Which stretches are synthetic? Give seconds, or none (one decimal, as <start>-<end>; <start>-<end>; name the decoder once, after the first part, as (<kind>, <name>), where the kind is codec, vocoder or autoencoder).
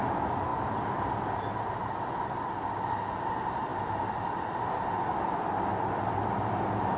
none